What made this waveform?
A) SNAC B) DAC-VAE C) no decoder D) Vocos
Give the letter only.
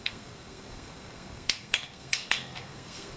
A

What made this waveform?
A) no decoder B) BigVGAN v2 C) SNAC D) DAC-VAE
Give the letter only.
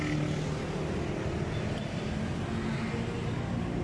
A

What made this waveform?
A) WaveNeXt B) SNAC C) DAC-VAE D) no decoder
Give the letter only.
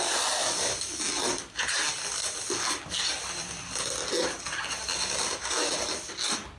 D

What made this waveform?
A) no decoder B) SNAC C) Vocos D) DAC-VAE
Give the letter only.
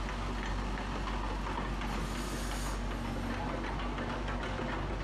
A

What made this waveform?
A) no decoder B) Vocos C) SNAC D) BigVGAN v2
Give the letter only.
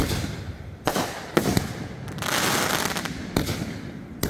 A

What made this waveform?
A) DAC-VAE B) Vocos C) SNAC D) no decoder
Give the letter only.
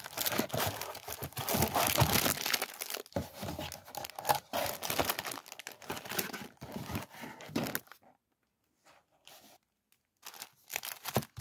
D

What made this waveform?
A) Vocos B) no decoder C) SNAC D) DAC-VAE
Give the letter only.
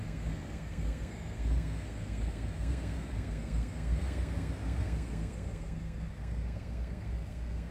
C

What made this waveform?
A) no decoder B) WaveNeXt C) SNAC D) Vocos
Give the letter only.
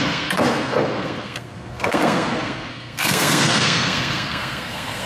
C